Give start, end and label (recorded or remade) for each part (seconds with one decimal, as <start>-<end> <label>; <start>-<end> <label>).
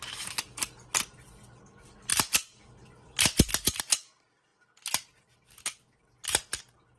0.0-2.1 recorded; 2.1-3.8 remade; 3.8-7.0 recorded